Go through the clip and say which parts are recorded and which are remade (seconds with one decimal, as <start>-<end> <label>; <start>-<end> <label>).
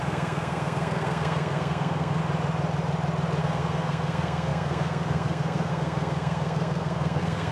0.0-2.2 remade; 2.2-3.4 recorded; 3.4-7.5 remade